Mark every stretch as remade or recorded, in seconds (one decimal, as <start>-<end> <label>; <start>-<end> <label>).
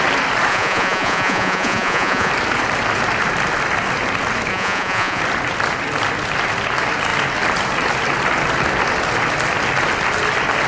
0.0-0.5 recorded; 0.5-2.3 remade; 2.3-4.5 recorded; 4.5-5.2 remade; 5.2-10.7 recorded